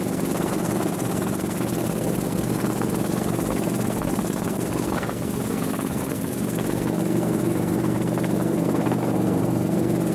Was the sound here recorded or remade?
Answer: remade